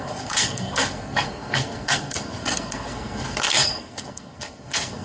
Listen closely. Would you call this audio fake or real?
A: fake